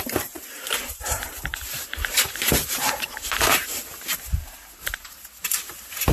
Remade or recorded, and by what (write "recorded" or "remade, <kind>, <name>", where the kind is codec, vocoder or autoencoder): remade, vocoder, BigVGAN v2